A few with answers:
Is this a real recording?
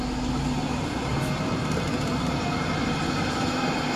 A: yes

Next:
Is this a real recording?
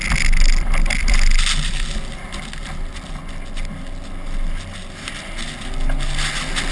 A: yes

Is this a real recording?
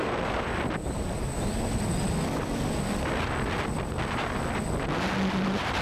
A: yes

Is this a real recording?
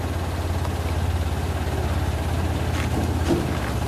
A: yes